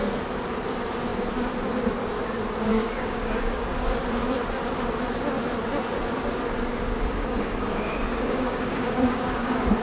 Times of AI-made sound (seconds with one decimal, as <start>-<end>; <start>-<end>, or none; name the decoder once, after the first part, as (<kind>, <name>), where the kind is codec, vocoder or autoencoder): 2.7-3.9 (codec, DAC); 6.7-9.8

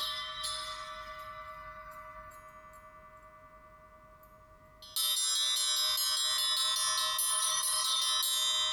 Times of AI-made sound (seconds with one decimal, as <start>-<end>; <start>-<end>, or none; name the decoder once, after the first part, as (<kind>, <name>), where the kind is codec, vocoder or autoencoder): 0.0-2.3 (codec, DAC); 7.3-8.0

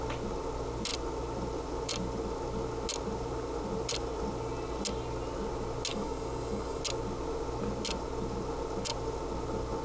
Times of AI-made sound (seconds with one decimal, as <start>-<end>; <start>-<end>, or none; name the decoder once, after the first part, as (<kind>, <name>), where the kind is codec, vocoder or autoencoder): 5.9-6.8 (codec, DAC)